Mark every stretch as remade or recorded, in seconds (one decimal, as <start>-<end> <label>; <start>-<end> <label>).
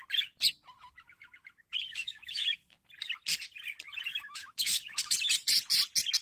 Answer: 0.0-1.9 recorded; 1.9-2.9 remade; 2.9-4.1 recorded; 4.1-5.1 remade; 5.1-6.2 recorded